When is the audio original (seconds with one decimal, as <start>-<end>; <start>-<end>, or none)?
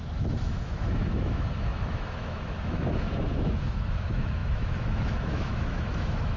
none